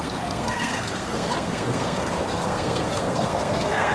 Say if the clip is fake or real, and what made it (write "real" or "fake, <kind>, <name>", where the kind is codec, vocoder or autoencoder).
fake, codec, SNAC